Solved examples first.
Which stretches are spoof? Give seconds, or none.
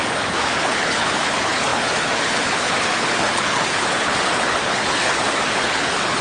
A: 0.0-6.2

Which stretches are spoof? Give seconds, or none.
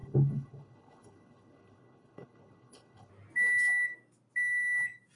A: 0.0-3.1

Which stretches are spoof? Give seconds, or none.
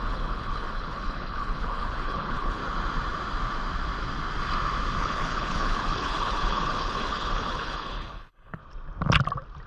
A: 0.0-2.6; 5.0-8.6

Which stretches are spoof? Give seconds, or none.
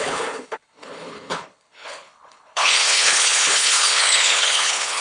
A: 0.0-5.0